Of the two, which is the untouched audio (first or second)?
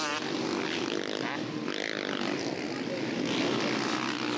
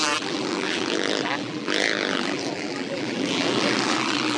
first